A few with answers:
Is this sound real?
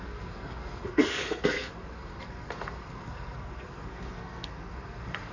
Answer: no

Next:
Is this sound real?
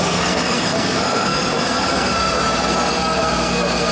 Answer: no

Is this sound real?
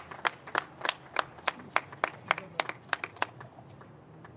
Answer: yes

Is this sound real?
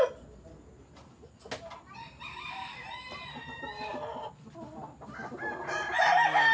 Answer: yes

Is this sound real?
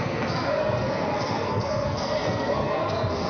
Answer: no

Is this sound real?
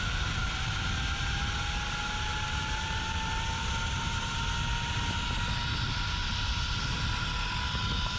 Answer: yes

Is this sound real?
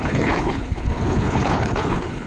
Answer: no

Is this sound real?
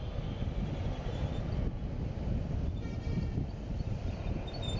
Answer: yes